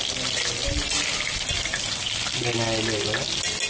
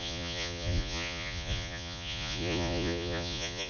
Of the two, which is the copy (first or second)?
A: second